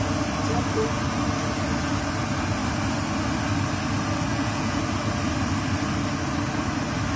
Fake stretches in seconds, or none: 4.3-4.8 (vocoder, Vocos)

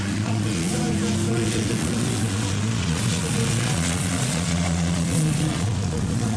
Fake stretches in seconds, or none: 0.0-0.7 (vocoder, Vocos); 1.3-6.4

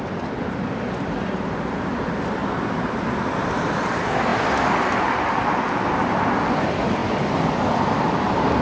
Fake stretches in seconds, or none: 0.0-4.3 (vocoder, BigVGAN v2); 6.4-8.6

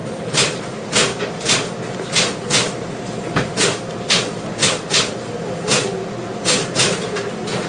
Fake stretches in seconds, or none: none

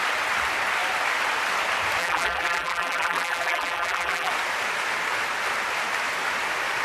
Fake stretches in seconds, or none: 2.0-4.3 (vocoder, BigVGAN v2)

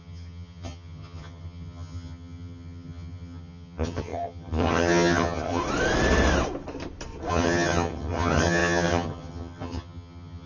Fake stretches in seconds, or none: 0.0-5.6 (vocoder, HiFi-GAN); 7.3-10.5

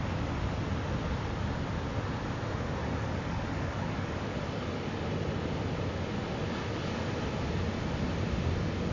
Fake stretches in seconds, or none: 2.8-5.0 (codec, DAC)

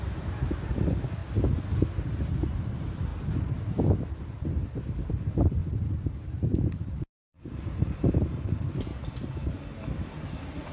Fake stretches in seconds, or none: 0.0-1.2 (vocoder, BigVGAN v2); 1.9-3.1; 4.8-8.9; 9.8-10.7